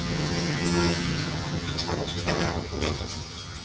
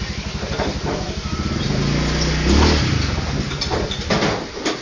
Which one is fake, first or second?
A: first